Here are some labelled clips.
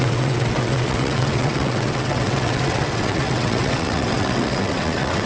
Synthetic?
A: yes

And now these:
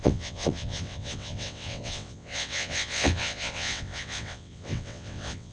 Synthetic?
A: yes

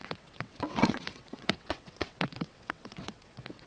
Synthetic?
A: yes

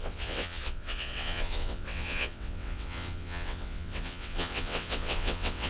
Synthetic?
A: yes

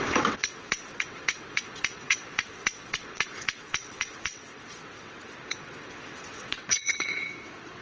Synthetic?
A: yes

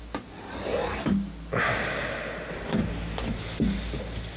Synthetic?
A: no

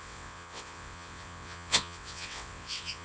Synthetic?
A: yes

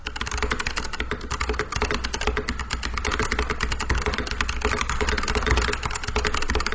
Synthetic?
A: no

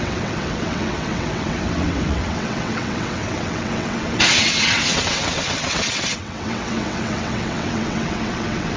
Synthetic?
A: yes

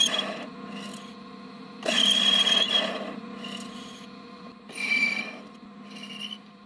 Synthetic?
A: no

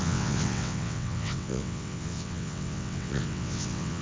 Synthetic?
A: yes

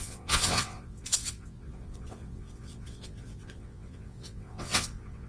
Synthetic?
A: yes